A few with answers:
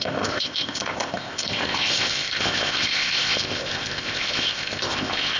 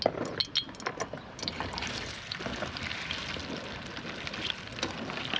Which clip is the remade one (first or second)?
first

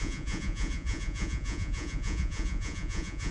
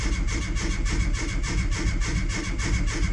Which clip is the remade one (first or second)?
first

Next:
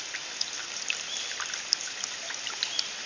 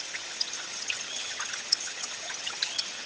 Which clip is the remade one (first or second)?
second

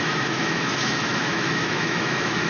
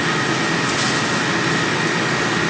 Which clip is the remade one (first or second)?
first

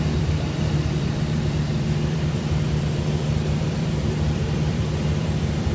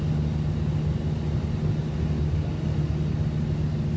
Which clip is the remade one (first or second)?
first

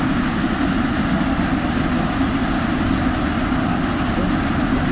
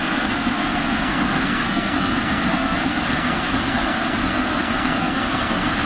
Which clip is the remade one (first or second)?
second